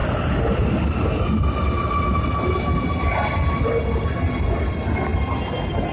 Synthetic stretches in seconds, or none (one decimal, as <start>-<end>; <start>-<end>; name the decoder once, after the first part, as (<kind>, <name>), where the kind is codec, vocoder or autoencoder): none